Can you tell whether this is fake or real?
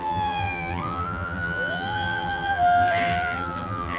fake